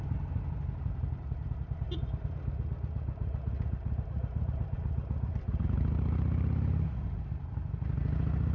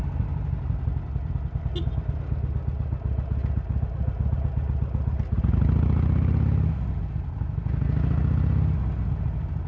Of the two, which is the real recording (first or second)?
second